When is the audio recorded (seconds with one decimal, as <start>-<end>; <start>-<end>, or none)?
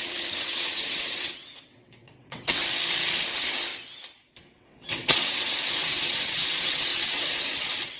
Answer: 2.6-3.3; 3.7-4.5